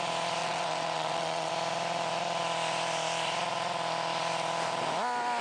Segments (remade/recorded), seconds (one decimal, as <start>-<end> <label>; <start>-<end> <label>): 0.0-0.4 recorded; 0.4-1.5 remade; 1.5-5.4 recorded